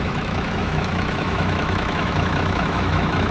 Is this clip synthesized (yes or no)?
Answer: yes